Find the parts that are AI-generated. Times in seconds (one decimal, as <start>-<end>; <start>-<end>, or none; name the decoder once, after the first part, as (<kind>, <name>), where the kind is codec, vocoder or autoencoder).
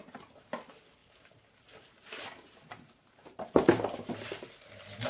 1.0-4.1 (vocoder, BigVGAN v2)